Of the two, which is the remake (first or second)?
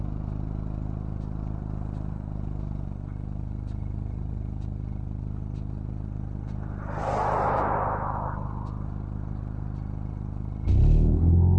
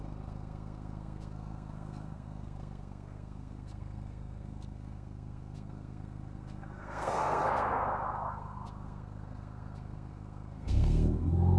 second